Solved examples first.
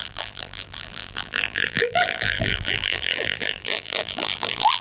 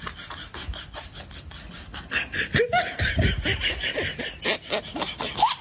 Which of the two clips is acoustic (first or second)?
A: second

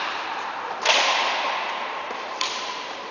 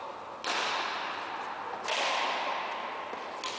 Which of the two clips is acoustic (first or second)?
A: second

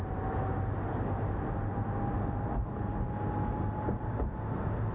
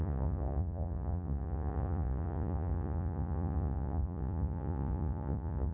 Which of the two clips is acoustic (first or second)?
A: first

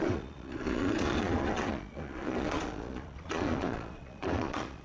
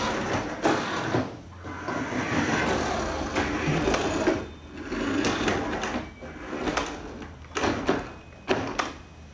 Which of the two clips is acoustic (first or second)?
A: second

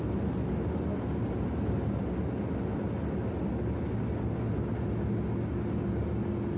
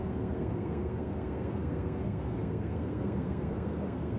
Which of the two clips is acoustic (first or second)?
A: first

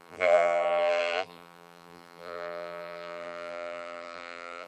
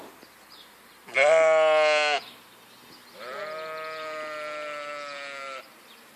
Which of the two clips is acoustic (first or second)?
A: second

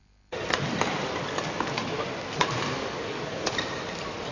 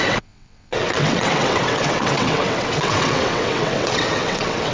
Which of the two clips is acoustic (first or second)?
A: first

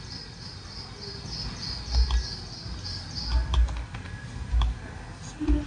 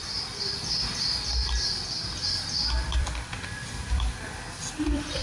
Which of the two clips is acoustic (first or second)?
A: first